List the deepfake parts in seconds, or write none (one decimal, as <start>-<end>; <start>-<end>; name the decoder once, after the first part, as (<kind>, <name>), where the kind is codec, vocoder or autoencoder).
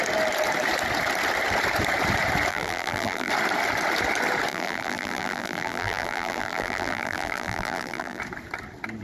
2.5-3.3 (vocoder, BigVGAN v2); 4.5-8.2